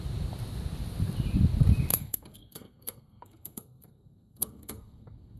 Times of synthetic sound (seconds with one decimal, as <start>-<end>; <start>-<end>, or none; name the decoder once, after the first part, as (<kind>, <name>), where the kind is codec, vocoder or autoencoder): 1.9-5.4 (codec, SNAC)